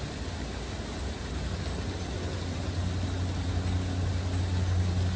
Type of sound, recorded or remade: recorded